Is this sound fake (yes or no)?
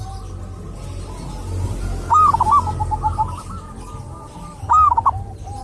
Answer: no